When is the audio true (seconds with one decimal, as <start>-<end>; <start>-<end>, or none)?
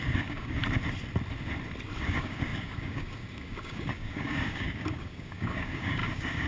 0.6-2.0